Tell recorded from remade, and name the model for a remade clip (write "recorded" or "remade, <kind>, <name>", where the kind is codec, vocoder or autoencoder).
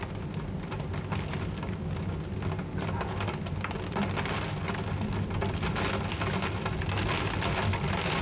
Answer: recorded